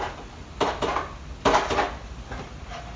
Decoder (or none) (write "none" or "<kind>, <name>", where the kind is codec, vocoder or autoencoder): none